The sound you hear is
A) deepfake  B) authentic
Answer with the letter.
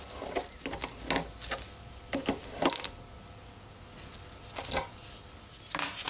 B